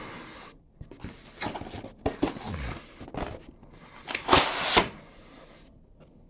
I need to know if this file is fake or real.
real